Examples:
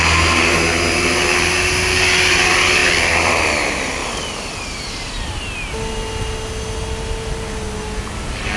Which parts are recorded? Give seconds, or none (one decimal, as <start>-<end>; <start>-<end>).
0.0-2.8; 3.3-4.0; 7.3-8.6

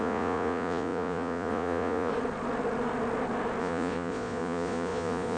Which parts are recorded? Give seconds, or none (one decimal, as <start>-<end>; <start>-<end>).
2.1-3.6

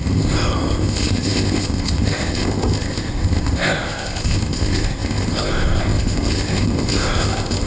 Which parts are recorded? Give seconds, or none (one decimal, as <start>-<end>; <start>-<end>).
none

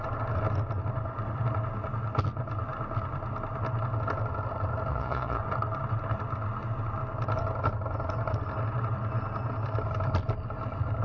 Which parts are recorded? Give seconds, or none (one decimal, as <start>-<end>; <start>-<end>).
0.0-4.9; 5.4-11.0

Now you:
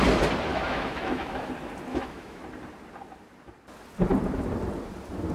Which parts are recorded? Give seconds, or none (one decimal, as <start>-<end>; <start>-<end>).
0.0-0.5; 1.5-1.9; 2.4-5.3

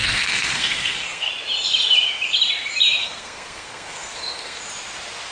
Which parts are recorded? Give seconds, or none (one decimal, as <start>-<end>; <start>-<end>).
1.3-3.0; 4.6-5.3

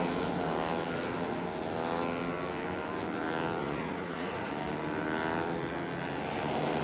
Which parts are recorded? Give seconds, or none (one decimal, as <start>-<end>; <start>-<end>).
0.0-3.6; 4.5-6.8